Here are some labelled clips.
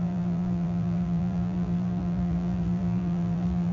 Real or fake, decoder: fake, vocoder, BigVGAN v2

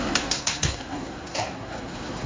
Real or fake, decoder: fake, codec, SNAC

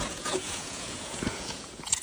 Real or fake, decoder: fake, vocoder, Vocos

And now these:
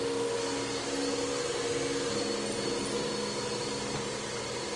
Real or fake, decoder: real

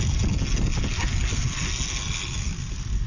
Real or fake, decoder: real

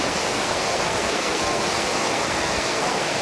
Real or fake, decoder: fake, codec, SNAC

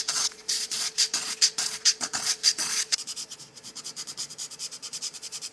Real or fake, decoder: fake, vocoder, Vocos